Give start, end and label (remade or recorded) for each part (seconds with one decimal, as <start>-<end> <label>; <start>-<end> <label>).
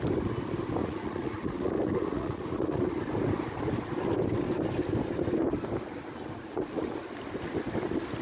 0.0-0.8 recorded; 0.8-2.9 remade; 2.9-6.4 recorded; 6.4-7.1 remade; 7.1-8.2 recorded